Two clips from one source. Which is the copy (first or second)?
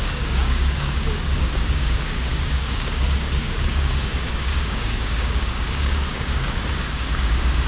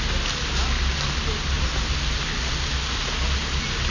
first